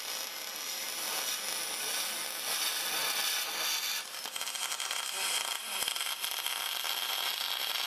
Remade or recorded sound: recorded